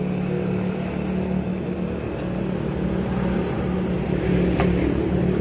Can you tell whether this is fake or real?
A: real